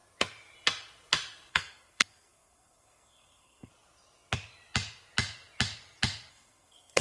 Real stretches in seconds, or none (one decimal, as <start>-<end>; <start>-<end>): 0.0-1.5; 3.7-6.3